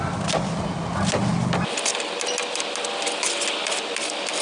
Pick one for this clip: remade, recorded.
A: recorded